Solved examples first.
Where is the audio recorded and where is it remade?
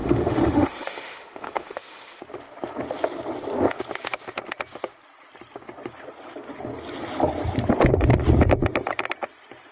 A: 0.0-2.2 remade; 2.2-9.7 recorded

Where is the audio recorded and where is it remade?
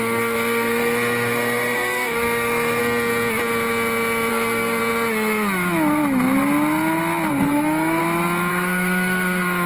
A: 0.0-2.8 remade; 2.8-4.3 recorded; 4.3-4.8 remade; 4.8-7.3 recorded; 7.3-8.0 remade; 8.0-8.5 recorded; 8.5-9.7 remade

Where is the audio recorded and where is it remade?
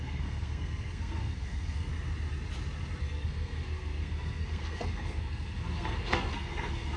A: 0.0-1.9 remade; 1.9-3.0 recorded; 3.0-7.0 remade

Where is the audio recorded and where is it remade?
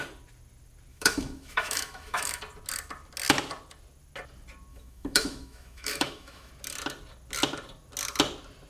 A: 0.0-0.9 recorded; 0.9-2.4 remade; 2.4-4.7 recorded; 4.7-6.5 remade; 6.5-8.7 recorded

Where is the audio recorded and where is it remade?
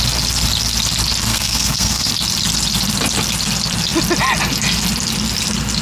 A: 0.0-1.3 recorded; 1.3-2.1 remade; 2.1-5.8 recorded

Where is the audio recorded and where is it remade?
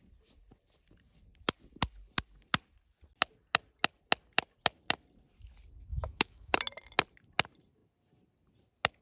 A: 0.0-5.9 recorded; 5.9-6.6 remade; 6.6-9.0 recorded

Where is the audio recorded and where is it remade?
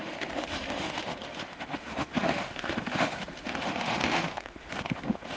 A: 0.0-5.4 remade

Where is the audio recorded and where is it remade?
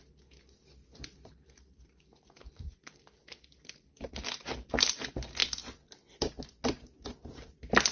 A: 0.0-0.9 recorded; 0.9-4.1 remade; 4.1-7.9 recorded